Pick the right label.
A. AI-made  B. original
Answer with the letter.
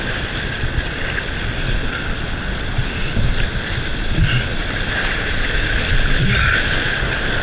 B